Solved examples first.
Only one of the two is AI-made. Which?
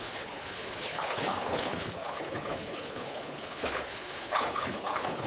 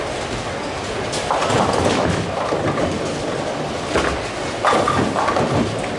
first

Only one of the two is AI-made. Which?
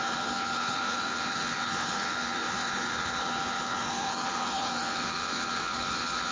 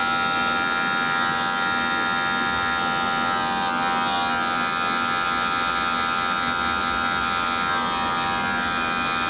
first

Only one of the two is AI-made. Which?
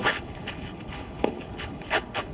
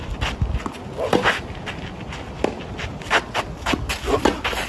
first